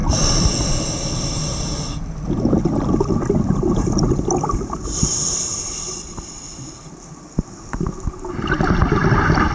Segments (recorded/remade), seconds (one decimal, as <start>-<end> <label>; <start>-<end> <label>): 0.0-9.5 recorded